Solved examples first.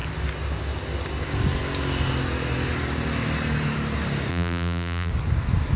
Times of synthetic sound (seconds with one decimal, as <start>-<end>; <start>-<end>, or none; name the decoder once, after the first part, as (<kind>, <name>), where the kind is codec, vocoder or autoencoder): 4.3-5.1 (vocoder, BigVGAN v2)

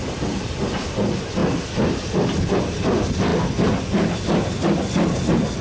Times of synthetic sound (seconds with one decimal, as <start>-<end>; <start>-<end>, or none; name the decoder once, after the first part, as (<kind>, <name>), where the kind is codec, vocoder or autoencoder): none

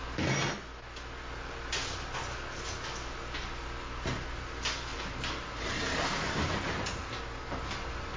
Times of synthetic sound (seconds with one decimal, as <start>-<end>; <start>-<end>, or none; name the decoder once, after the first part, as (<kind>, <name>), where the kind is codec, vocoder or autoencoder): 4.9-7.2 (vocoder, BigVGAN v2)

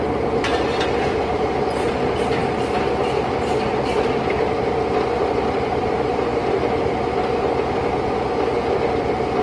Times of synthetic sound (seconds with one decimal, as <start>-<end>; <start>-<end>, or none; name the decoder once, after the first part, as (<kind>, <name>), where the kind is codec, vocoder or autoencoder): 2.4-2.9 (vocoder, BigVGAN v2); 6.3-7.5

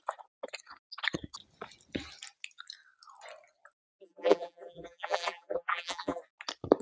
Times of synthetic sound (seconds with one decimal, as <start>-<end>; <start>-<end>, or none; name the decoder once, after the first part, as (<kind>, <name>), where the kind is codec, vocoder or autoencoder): 4.0-6.2 (vocoder, BigVGAN v2)

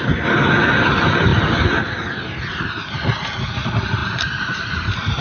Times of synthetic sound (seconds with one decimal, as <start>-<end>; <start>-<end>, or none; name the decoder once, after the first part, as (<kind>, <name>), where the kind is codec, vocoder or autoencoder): 4.0-5.2 (vocoder, BigVGAN v2)